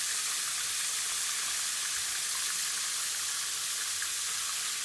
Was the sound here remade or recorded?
recorded